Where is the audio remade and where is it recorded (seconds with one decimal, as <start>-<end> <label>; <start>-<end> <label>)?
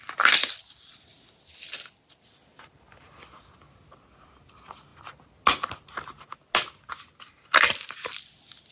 0.0-8.7 recorded